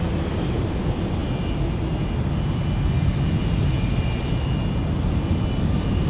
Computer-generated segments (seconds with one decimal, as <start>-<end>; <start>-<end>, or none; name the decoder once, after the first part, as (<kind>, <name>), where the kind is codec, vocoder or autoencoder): 4.8-6.1 (vocoder, BigVGAN v2)